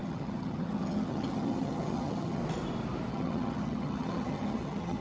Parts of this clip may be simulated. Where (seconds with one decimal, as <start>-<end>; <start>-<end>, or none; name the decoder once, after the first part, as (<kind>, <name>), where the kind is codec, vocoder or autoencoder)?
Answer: 0.0-2.4 (vocoder, HiFi-GAN); 3.1-5.0